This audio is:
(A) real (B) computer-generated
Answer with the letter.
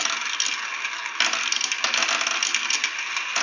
A